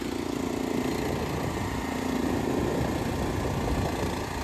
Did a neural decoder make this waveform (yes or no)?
no